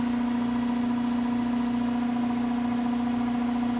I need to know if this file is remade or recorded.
recorded